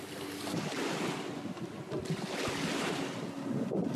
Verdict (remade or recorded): recorded